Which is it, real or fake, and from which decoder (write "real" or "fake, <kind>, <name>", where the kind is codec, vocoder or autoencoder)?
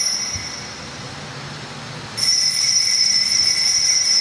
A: fake, vocoder, BigVGAN v2